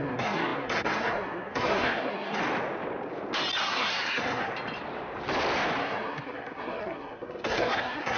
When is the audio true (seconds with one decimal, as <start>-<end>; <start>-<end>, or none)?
2.4-3.6; 4.5-5.8

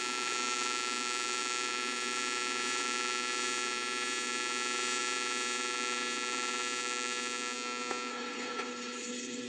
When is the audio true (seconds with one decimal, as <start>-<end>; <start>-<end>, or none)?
0.0-8.1

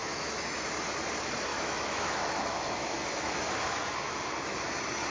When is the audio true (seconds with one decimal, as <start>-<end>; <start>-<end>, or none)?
0.7-1.5; 4.6-5.1

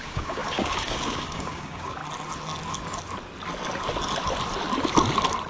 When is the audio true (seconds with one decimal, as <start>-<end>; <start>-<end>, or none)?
2.0-5.5

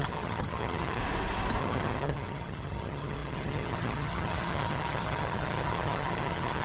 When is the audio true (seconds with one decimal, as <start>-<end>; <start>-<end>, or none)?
1.0-1.6

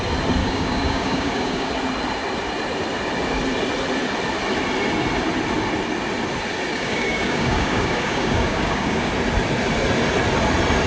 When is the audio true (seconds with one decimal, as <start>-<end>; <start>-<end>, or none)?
0.0-0.4; 1.7-6.7; 9.1-10.9

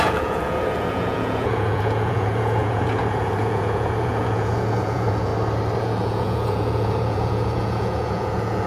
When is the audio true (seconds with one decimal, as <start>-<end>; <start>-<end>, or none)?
5.3-5.8

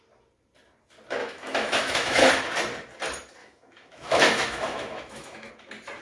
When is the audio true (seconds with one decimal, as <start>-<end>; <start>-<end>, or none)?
0.0-1.2; 2.3-3.4; 5.5-6.0